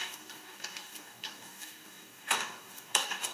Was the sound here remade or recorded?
remade